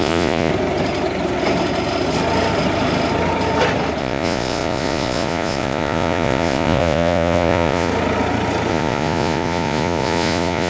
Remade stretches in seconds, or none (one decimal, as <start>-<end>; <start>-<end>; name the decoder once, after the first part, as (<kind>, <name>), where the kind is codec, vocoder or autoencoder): 0.0-0.5 (vocoder, Vocos); 4.0-7.9; 8.7-10.7